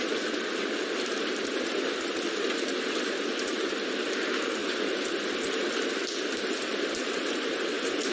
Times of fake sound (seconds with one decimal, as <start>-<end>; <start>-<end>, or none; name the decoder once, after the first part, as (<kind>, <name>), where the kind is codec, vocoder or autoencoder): none